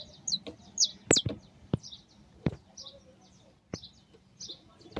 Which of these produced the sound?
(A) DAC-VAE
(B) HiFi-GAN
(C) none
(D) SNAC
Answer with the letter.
C